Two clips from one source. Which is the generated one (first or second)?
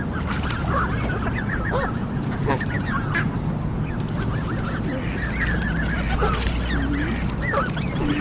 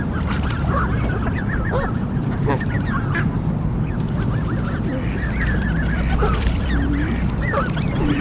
second